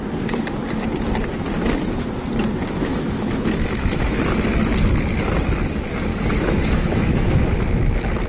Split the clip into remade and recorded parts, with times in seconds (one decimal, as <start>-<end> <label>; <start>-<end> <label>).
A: 0.0-2.9 recorded; 2.9-4.3 remade; 4.3-6.1 recorded; 6.1-7.4 remade; 7.4-8.3 recorded